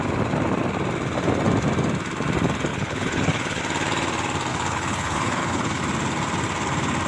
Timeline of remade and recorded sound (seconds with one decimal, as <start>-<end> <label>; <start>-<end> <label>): 0.0-2.7 recorded; 2.7-3.6 remade; 3.6-4.5 recorded; 4.5-5.8 remade; 5.8-7.1 recorded

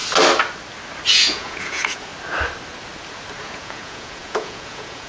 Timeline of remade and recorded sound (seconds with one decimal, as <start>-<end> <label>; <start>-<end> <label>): 0.0-1.1 recorded; 1.1-2.1 remade; 2.1-3.4 recorded; 3.4-5.1 remade